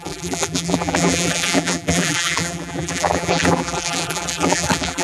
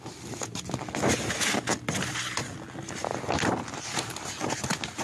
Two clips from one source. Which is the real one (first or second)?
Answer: second